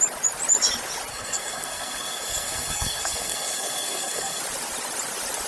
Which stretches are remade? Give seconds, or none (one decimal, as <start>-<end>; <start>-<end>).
1.1-4.4